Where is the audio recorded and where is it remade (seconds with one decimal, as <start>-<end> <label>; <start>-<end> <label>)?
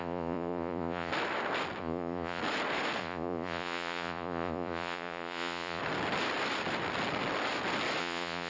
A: 0.0-1.1 remade; 1.1-1.8 recorded; 1.8-2.4 remade; 2.4-3.0 recorded; 3.0-5.8 remade; 5.8-8.0 recorded; 8.0-8.5 remade